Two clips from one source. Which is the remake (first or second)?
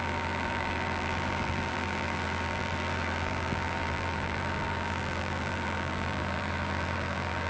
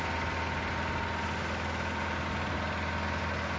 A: first